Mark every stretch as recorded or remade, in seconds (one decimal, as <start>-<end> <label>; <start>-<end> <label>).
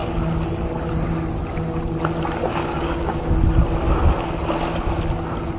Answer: 0.0-2.5 recorded; 2.5-3.3 remade; 3.3-5.6 recorded